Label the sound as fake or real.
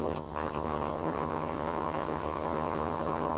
fake